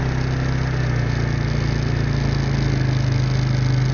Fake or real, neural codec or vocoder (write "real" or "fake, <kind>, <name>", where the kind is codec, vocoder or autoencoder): real